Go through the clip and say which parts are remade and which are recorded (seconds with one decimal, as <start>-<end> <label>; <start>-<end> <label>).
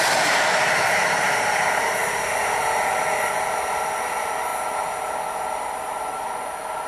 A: 0.0-6.9 recorded